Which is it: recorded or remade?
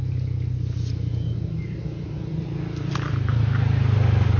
recorded